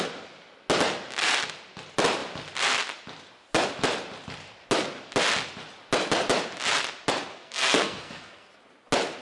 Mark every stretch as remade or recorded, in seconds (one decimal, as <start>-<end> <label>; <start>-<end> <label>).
0.0-7.3 recorded; 7.3-8.5 remade; 8.5-9.2 recorded